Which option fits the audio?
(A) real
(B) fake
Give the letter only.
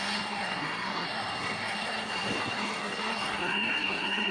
B